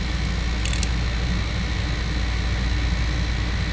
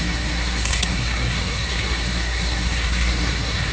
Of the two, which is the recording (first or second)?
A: first